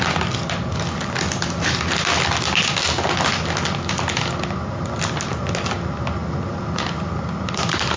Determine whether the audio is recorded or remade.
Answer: recorded